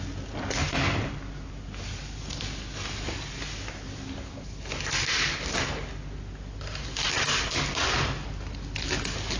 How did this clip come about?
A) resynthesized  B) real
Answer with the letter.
B